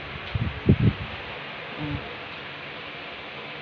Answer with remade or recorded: recorded